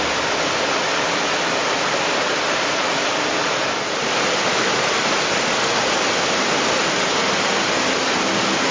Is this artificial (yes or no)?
no